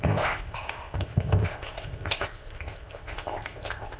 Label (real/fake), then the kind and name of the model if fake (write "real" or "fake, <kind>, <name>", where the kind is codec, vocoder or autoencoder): fake, codec, ZipCodec